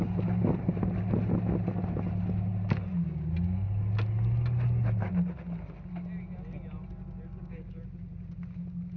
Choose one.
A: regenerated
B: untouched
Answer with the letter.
B